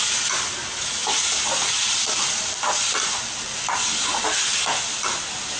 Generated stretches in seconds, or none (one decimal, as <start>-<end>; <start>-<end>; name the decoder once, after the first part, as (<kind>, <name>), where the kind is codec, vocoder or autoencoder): none